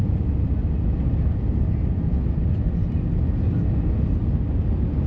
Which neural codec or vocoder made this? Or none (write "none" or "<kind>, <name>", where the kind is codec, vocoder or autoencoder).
none